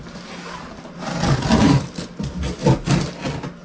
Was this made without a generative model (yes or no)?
yes